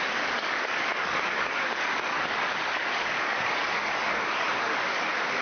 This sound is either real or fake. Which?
fake